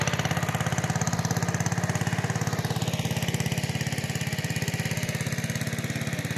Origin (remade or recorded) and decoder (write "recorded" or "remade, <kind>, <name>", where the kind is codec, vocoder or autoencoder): recorded